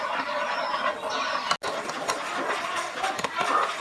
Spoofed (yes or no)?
no